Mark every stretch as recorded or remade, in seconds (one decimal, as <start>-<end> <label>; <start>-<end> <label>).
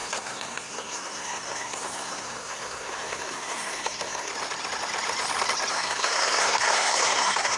0.0-4.3 remade; 4.3-5.7 recorded; 5.7-7.6 remade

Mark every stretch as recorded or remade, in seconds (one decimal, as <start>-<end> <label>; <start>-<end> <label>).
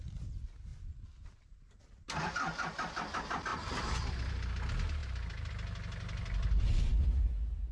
0.0-0.7 recorded; 0.7-1.8 remade; 1.8-3.5 recorded; 3.5-4.3 remade; 4.3-7.7 recorded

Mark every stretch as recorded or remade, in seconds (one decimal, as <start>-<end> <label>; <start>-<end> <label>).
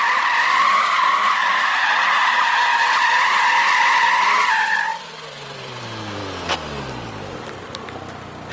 0.0-4.9 recorded; 4.9-5.8 remade; 5.8-8.5 recorded